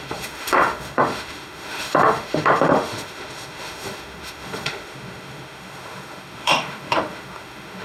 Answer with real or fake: fake